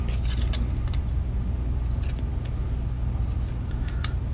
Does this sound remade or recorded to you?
recorded